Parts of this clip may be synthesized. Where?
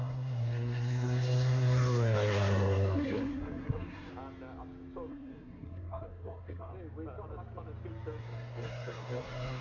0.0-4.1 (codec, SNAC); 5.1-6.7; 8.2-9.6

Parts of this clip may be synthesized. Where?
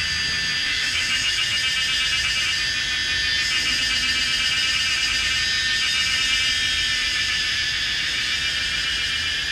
0.6-1.6 (autoencoder, DAC-VAE)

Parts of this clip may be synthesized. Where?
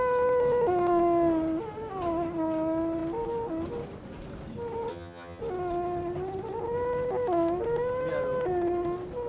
4.9-5.4 (vocoder, HiFi-GAN)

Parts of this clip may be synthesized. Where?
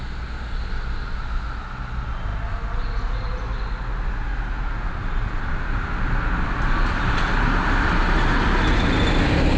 none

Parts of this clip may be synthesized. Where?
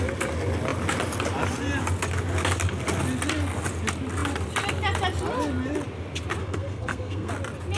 6.4-7.3 (codec, SNAC)